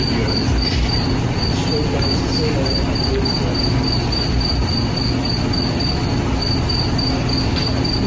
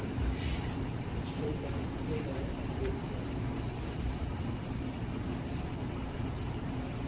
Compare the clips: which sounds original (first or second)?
first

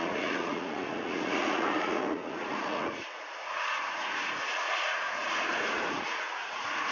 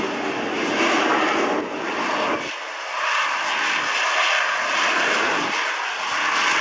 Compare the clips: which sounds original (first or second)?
second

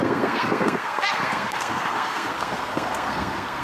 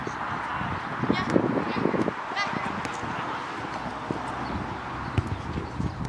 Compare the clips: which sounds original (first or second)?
second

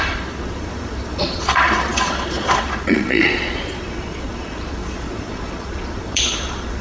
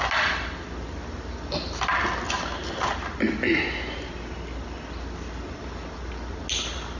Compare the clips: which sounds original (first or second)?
second